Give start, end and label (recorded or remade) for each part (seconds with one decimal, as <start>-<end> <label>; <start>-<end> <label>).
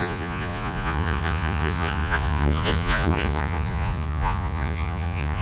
0.0-5.4 remade